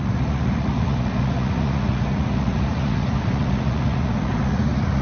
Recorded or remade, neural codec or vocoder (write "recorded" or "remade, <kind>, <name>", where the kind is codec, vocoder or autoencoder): remade, vocoder, Vocos